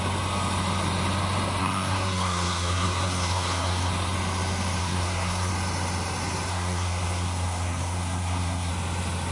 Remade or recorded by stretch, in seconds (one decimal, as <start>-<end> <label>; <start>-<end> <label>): 0.0-1.6 recorded; 1.6-3.9 remade; 3.9-4.8 recorded; 4.8-5.5 remade; 5.5-6.5 recorded; 6.5-8.7 remade; 8.7-9.3 recorded